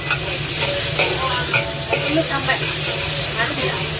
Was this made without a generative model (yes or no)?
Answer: yes